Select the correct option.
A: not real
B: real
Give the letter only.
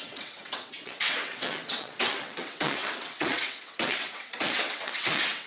A